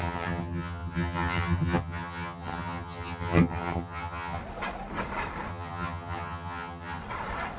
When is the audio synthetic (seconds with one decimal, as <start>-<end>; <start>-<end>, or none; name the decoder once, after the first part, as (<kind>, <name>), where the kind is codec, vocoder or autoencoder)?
0.0-4.4 (vocoder, HiFi-GAN); 5.5-7.0

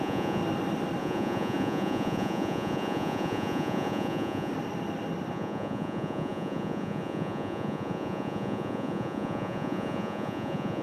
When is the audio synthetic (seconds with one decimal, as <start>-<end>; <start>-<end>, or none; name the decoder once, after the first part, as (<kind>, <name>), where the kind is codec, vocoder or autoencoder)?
0.0-0.4 (vocoder, Vocos); 1.0-4.5; 5.3-10.8

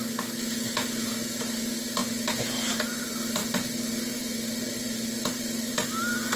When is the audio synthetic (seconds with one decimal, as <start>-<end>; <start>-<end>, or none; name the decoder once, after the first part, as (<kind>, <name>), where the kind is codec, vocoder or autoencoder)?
none

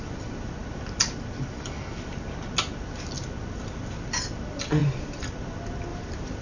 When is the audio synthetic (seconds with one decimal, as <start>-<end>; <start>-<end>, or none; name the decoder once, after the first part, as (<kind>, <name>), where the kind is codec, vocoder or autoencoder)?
4.8-5.4 (vocoder, BigVGAN v2); 5.9-6.4

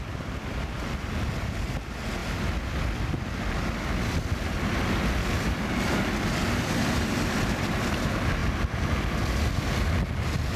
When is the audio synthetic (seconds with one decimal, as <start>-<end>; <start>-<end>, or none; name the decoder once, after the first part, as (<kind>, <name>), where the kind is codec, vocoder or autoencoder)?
none

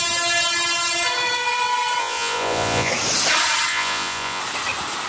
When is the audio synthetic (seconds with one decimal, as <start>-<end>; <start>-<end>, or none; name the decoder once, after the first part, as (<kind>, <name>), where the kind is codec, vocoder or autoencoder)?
2.0-2.9 (vocoder, Vocos); 3.7-4.4